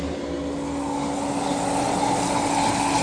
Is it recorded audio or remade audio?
recorded